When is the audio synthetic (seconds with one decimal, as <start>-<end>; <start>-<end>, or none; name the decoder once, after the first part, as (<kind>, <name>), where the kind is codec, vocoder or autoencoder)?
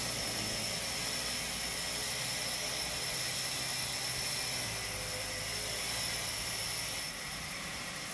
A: none